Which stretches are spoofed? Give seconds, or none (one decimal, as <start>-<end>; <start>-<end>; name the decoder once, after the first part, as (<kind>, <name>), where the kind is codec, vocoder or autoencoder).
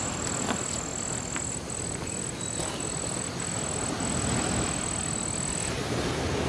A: none